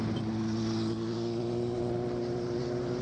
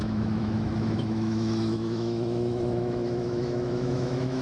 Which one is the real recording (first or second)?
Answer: first